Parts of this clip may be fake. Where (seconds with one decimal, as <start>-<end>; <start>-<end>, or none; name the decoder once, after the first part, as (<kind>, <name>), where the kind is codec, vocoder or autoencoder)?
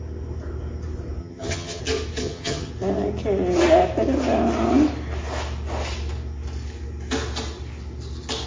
1.2-1.8 (vocoder, HiFi-GAN); 2.2-2.7